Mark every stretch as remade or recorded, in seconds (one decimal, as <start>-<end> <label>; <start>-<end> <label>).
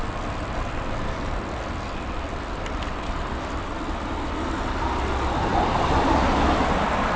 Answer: 0.0-7.2 recorded